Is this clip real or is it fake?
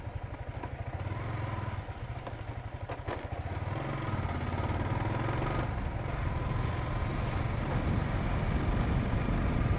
real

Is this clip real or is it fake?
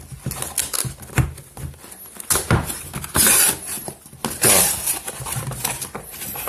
real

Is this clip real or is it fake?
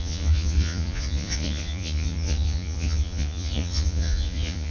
fake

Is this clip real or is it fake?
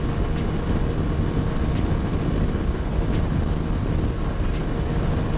real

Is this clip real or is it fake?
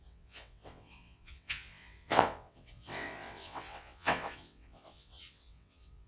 fake